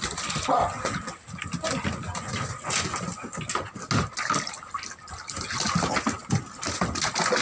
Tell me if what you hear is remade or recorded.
recorded